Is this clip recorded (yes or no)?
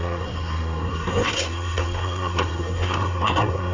no